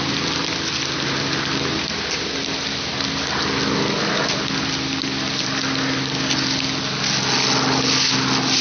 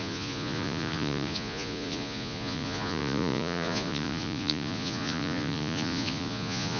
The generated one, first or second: second